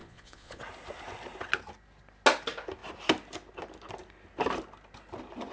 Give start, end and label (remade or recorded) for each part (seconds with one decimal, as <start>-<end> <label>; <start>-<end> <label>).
0.0-0.6 remade; 0.6-5.5 recorded